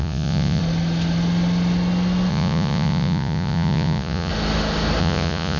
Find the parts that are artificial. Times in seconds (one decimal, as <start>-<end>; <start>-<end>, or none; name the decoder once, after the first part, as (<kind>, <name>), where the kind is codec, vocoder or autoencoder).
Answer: 0.0-0.6 (vocoder, Vocos); 2.3-4.3; 5.0-5.6